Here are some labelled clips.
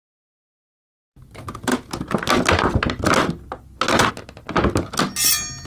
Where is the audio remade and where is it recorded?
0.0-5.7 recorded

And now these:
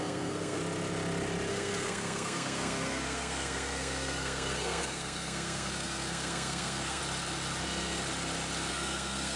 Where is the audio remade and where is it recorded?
0.0-0.6 remade; 0.6-1.5 recorded; 1.5-7.0 remade; 7.0-8.7 recorded; 8.7-9.4 remade

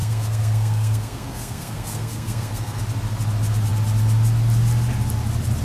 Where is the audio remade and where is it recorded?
0.0-2.8 remade; 2.8-5.6 recorded